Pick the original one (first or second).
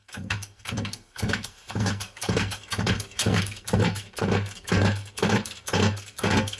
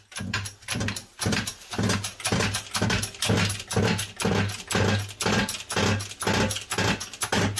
second